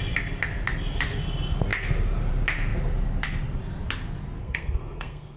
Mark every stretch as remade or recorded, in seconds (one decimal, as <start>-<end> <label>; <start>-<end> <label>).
0.0-4.4 recorded; 4.4-5.4 remade